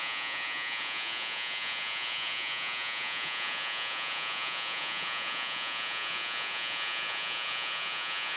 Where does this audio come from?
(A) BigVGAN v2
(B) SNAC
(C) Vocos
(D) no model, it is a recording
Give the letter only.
C